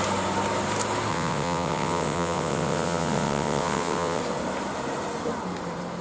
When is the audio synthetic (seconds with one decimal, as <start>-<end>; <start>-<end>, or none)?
1.1-4.2